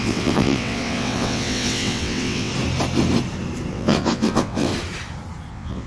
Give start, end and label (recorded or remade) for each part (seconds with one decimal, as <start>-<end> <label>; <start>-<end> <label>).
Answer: 0.0-2.5 remade; 2.5-3.7 recorded; 3.7-4.7 remade; 4.7-5.5 recorded; 5.5-5.9 remade